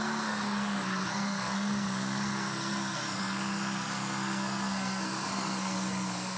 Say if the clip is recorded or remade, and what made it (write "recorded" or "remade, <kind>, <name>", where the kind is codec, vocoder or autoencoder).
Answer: remade, codec, SNAC